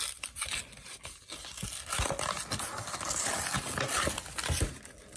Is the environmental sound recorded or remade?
recorded